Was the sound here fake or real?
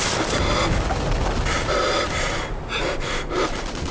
real